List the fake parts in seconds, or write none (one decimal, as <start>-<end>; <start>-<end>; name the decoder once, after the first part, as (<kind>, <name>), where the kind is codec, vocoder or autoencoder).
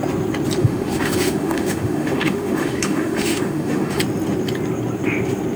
0.6-4.0 (autoencoder, DAC-VAE)